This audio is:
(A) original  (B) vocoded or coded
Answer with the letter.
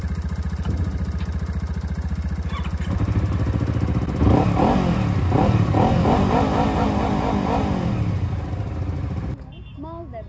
A